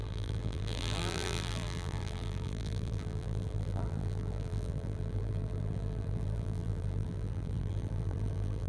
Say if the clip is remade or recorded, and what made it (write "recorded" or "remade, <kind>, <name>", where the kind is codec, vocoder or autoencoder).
remade, vocoder, BigVGAN v2